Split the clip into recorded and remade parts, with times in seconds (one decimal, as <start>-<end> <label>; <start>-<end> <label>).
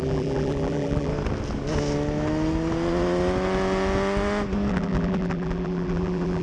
0.0-1.1 remade; 1.1-4.7 recorded; 4.7-6.4 remade